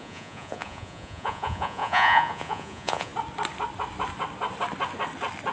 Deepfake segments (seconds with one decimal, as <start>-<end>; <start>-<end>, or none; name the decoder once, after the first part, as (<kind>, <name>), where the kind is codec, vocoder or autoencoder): 0.0-3.1 (vocoder, Vocos)